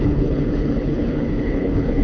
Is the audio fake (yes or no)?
yes